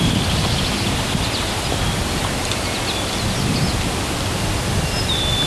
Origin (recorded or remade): recorded